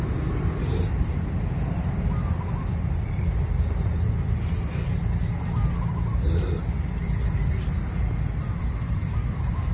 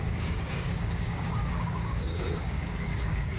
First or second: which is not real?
second